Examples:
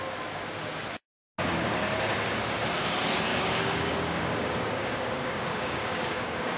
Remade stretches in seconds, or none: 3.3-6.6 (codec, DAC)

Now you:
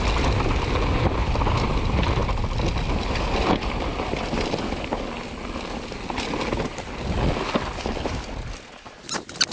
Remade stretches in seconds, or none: none

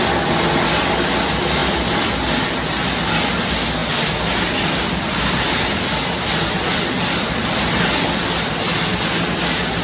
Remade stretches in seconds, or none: none

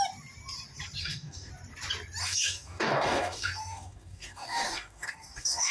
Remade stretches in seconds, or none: 1.0-1.5 (codec, DAC); 2.2-5.7

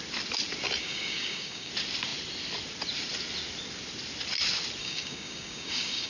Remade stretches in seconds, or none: 0.8-1.7 (codec, DAC); 4.8-6.1

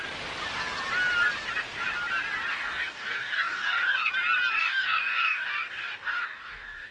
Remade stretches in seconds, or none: 2.5-4.1 (codec, DAC); 4.6-6.9

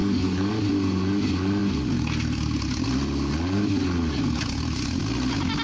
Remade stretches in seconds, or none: 0.0-0.5 (codec, DAC)

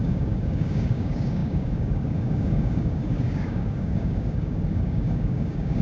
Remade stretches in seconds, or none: 0.0-5.8 (codec, DAC)